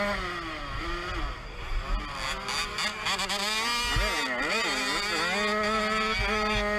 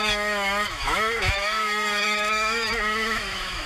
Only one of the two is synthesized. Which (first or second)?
second